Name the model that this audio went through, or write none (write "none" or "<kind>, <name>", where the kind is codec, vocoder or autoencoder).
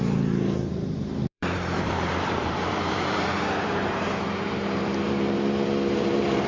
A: vocoder, BigVGAN v2